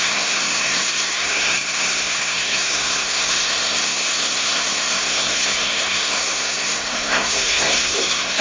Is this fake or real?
fake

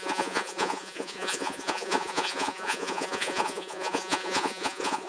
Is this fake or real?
fake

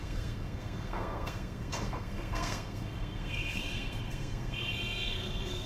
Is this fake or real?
fake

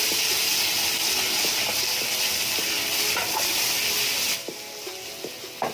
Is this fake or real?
real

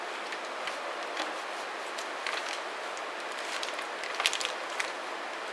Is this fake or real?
real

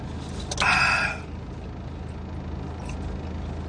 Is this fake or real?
real